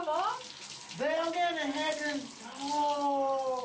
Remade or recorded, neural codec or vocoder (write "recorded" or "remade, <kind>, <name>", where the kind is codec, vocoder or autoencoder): recorded